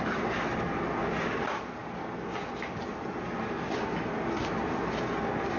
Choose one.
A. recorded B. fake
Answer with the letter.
A